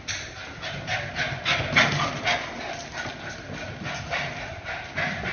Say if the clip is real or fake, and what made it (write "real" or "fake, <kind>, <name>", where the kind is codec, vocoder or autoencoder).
real